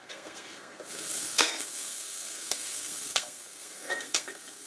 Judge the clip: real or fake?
fake